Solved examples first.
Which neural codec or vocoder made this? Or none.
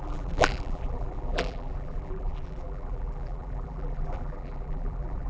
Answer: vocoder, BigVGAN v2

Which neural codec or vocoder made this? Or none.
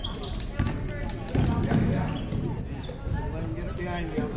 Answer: none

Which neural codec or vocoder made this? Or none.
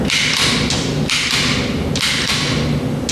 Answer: none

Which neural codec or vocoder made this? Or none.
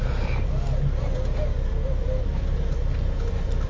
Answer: none